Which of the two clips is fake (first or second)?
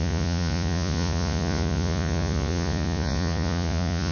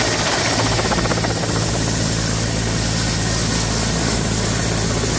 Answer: first